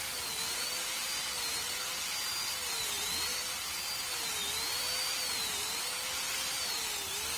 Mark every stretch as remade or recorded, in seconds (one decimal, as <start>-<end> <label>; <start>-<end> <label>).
0.0-7.4 recorded